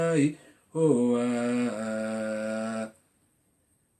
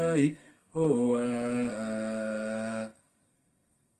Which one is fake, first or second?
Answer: second